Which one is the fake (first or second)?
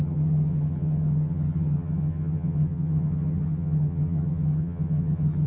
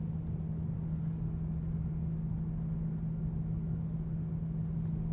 first